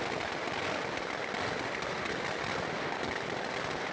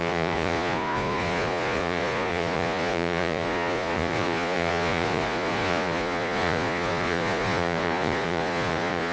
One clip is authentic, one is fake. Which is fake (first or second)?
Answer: second